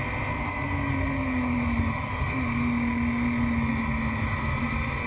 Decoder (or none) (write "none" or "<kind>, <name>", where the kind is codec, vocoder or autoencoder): none